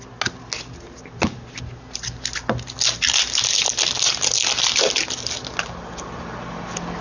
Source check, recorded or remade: recorded